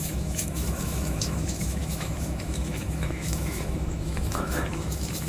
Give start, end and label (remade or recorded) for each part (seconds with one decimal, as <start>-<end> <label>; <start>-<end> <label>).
0.0-5.3 remade